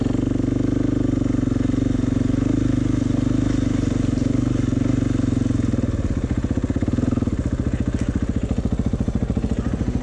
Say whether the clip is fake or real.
real